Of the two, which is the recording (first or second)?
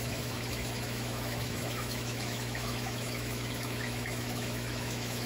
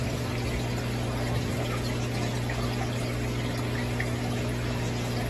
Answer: second